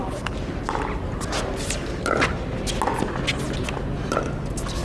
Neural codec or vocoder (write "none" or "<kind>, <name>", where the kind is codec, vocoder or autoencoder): none